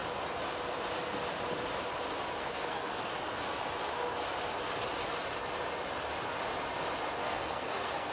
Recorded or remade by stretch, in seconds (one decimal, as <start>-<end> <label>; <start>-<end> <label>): 0.0-2.4 recorded; 2.4-3.0 remade; 3.0-7.2 recorded; 7.2-8.1 remade